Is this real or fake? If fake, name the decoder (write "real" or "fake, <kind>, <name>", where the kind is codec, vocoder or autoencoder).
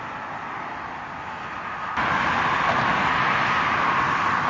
real